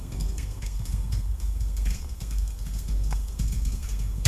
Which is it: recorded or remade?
remade